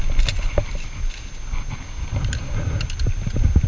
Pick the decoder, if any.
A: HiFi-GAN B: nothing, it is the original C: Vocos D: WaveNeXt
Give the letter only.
B